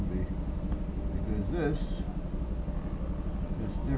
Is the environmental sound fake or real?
real